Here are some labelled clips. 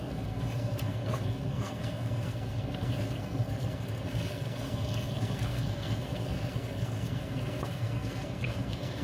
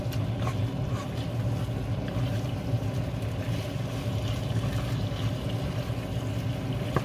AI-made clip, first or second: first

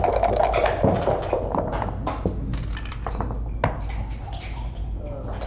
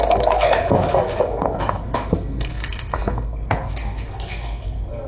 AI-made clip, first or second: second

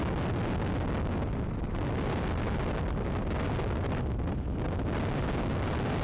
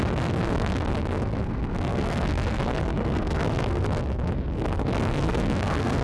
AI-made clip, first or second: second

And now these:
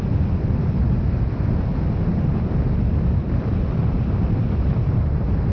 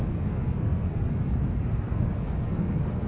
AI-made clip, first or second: second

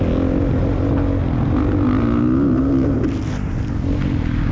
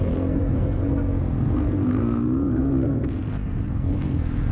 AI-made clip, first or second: second